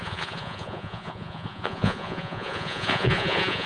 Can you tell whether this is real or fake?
fake